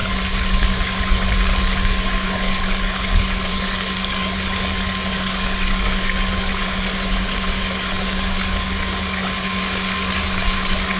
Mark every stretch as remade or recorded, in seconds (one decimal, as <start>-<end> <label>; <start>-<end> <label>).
0.0-11.0 remade